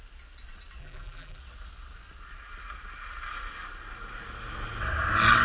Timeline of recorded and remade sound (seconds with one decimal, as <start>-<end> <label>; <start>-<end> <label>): 0.0-0.8 recorded; 0.8-1.4 remade; 1.4-5.4 recorded